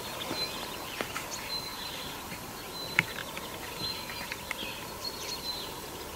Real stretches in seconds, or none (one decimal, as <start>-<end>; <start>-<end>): 0.0-1.7; 2.3-3.2